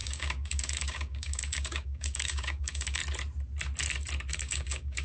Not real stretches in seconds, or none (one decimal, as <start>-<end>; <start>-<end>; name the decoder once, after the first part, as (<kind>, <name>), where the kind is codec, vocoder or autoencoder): 0.0-3.0 (codec, DAC); 4.3-5.0